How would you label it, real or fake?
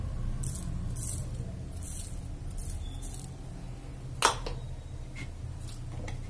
real